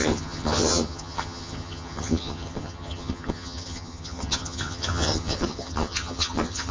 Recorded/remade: remade